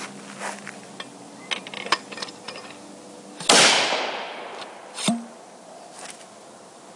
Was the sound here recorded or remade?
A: recorded